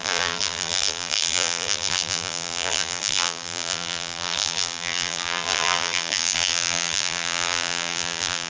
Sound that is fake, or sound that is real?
fake